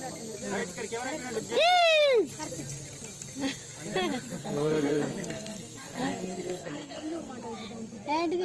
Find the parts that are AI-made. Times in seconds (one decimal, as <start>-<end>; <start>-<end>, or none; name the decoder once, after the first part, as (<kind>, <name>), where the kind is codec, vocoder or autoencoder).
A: 4.4-7.3 (codec, SNAC)